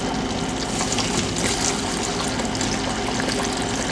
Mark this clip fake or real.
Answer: real